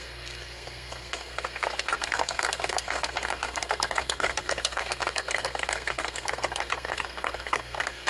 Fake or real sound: fake